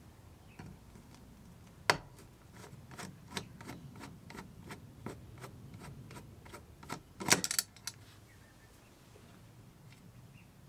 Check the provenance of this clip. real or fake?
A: real